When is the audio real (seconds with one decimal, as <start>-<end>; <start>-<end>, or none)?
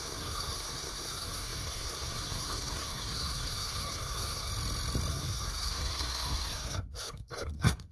4.5-5.1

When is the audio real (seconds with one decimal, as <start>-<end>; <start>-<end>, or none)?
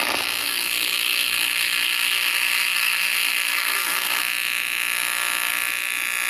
0.0-0.4; 4.2-6.3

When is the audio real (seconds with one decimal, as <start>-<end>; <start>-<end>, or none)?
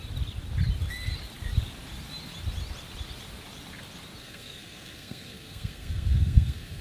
0.0-4.2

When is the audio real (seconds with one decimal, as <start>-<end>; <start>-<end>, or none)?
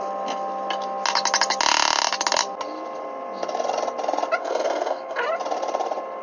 0.0-4.4; 5.2-6.2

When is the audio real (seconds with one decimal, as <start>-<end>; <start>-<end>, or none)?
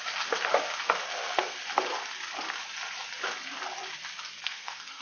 0.0-1.1; 1.6-4.4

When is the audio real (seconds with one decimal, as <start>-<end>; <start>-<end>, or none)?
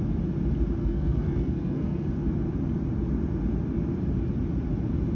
0.0-0.8; 2.1-5.2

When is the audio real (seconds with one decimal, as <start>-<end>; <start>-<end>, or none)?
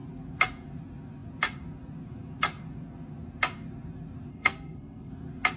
0.0-4.3; 5.1-5.6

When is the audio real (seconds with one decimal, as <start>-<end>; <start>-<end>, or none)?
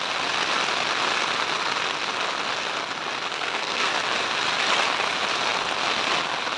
0.0-3.3; 3.9-6.6